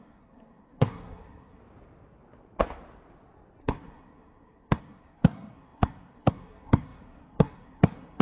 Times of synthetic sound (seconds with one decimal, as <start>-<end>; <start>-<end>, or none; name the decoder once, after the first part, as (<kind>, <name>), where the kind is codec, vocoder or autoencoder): 0.0-1.6 (codec, SNAC); 3.6-8.2